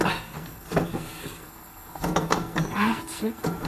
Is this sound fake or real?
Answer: fake